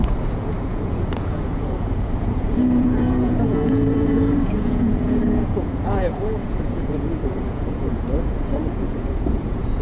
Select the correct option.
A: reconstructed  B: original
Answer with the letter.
A